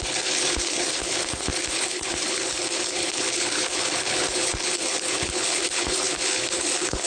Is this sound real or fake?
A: fake